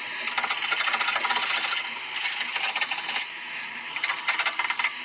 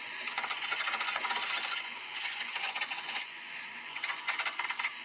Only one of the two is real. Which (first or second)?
first